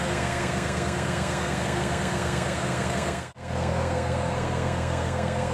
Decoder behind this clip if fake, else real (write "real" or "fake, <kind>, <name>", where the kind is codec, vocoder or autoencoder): fake, codec, SNAC